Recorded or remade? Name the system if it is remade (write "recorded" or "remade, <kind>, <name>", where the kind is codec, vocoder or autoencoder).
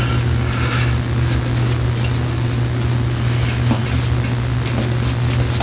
recorded